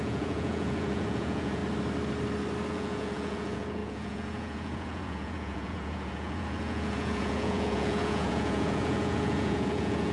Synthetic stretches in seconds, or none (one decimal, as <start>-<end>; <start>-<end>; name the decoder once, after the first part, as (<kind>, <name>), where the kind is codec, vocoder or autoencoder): 0.0-1.6 (vocoder, Vocos); 2.7-10.1